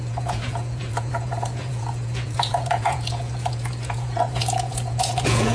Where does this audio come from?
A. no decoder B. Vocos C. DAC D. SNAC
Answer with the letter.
B